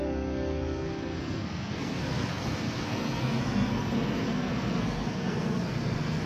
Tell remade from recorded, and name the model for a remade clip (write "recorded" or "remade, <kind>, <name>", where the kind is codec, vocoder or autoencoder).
remade, codec, SNAC